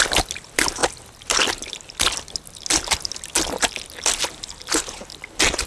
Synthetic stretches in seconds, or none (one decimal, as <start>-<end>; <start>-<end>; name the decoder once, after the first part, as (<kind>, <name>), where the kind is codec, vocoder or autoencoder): none